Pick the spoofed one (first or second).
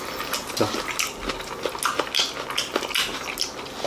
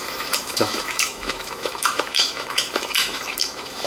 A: second